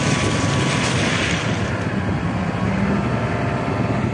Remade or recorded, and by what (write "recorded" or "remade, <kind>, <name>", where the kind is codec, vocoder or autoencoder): recorded